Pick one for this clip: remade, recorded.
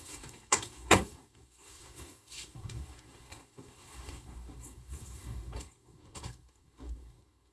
remade